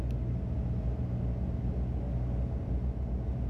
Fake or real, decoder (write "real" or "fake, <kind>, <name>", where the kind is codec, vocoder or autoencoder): real